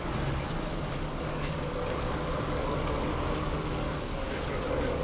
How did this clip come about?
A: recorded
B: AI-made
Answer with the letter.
B